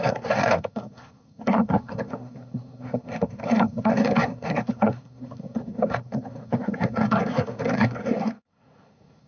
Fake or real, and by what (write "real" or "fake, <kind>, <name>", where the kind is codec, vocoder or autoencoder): fake, codec, SNAC